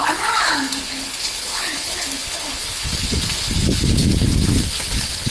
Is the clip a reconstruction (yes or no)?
yes